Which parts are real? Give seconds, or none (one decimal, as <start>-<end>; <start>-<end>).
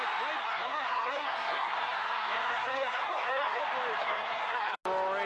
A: 0.0-0.4; 3.6-4.0; 4.8-5.3